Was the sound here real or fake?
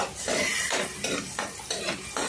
real